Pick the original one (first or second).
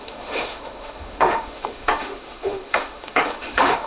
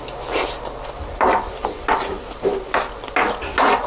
second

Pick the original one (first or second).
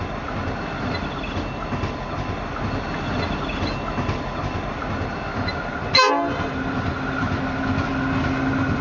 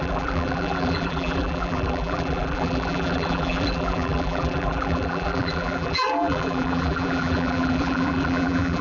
first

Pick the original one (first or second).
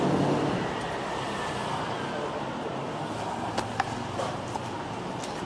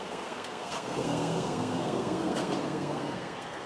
first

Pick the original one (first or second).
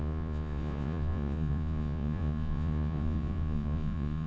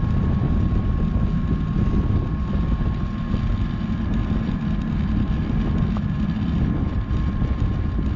second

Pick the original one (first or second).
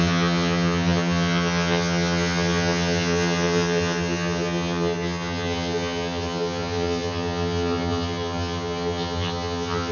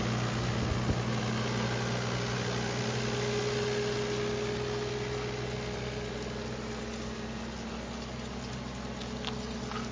second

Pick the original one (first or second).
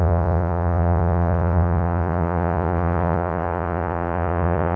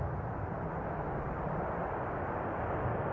second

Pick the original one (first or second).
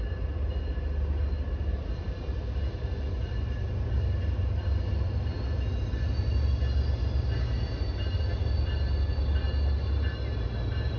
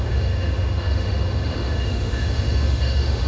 first